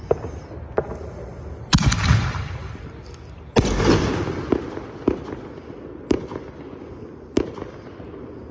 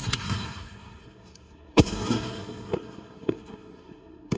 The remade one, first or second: second